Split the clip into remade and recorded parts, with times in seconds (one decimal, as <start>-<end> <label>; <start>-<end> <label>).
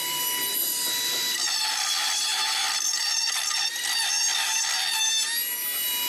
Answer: 0.0-3.7 remade; 3.7-6.1 recorded